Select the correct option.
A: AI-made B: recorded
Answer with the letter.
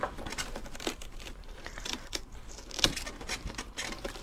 A